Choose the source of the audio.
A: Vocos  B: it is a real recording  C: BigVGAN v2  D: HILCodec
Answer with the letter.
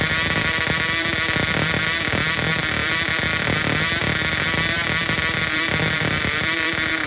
C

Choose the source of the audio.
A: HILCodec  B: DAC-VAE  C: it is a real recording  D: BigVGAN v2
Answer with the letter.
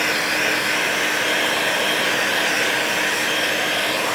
C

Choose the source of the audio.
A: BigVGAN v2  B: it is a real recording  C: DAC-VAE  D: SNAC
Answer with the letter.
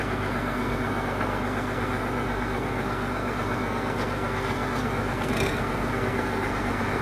D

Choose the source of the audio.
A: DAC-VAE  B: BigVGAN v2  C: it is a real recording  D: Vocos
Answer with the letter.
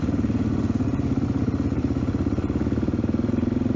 C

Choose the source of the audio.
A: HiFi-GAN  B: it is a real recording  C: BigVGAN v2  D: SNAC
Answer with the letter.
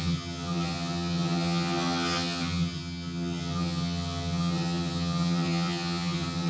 A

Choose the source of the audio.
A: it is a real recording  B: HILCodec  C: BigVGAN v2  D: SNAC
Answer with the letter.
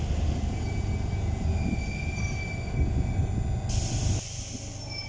A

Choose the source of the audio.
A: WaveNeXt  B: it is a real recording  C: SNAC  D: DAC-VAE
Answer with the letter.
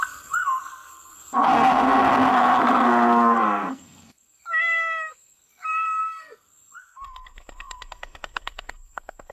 C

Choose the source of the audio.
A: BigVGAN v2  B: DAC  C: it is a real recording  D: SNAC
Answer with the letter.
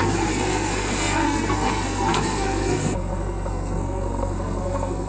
D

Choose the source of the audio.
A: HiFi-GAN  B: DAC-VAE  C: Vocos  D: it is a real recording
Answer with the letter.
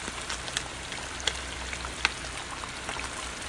D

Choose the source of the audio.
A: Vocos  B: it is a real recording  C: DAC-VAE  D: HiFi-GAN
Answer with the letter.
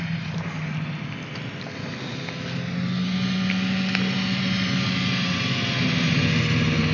B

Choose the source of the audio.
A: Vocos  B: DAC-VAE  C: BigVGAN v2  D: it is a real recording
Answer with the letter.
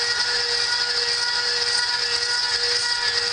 D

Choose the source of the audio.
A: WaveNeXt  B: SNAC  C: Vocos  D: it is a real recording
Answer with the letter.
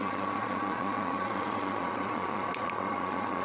C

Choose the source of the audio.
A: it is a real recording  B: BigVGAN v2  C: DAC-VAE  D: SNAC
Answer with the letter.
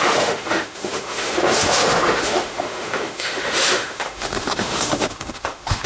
C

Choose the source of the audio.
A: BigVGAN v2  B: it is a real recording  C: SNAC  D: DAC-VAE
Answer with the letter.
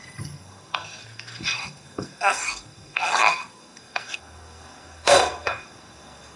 C